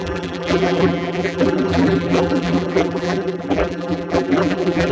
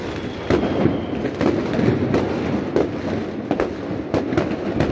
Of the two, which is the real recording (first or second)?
second